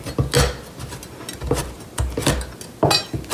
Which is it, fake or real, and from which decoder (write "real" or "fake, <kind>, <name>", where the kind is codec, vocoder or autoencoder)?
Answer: real